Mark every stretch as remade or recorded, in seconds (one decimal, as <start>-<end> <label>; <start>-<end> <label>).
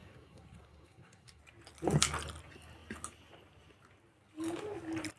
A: 0.0-1.4 remade; 1.4-5.2 recorded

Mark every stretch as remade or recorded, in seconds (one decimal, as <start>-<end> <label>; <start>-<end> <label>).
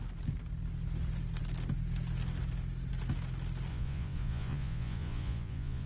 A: 0.0-3.7 recorded; 3.7-5.9 remade